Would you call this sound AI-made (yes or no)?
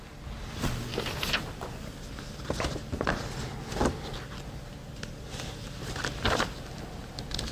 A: no